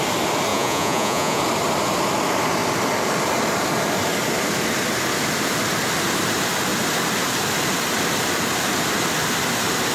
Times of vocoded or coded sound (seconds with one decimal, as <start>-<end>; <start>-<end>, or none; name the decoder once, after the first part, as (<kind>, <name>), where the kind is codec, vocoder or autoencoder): 0.5-1.4 (vocoder, Vocos)